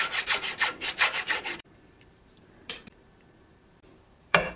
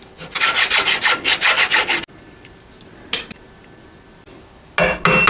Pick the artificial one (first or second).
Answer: first